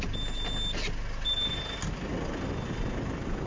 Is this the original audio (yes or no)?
yes